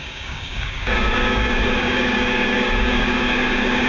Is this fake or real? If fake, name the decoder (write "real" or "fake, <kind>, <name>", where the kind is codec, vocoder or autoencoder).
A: fake, codec, DAC